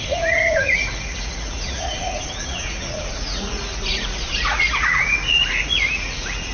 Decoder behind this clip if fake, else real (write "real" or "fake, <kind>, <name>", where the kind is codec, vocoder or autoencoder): fake, vocoder, Vocos